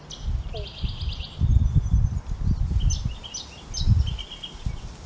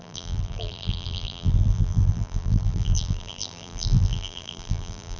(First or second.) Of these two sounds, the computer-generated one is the second